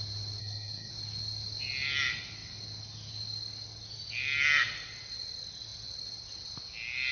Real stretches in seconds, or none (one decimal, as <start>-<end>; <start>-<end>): 0.0-0.4; 0.9-7.1